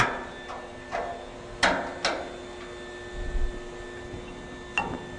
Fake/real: real